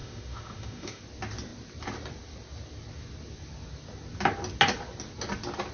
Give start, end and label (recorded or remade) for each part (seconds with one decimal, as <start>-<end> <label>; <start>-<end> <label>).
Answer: 0.0-1.0 remade; 1.0-5.7 recorded